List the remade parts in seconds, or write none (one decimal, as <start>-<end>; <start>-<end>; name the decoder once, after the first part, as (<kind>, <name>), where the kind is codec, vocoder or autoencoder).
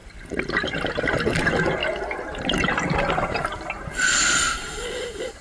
1.0-1.8 (vocoder, BigVGAN v2); 4.7-5.4